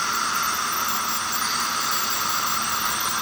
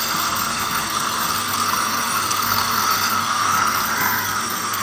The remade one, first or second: second